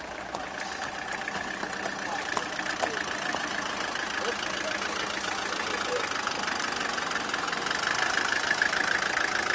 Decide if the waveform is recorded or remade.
recorded